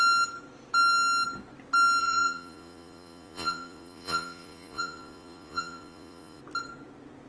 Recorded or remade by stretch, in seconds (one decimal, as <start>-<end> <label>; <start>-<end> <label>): 0.0-2.0 recorded; 2.0-6.4 remade; 6.4-7.3 recorded